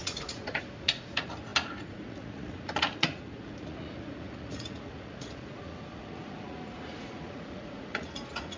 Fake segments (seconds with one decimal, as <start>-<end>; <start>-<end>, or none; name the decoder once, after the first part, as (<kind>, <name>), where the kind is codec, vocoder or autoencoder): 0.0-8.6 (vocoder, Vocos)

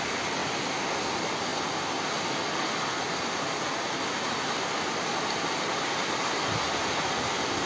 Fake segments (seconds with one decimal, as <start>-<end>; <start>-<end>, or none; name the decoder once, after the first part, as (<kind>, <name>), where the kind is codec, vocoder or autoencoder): none

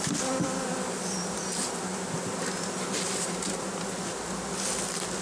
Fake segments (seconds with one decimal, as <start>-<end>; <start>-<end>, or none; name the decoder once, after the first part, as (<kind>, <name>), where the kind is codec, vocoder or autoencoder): none